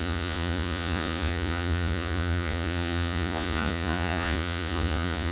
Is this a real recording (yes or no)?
no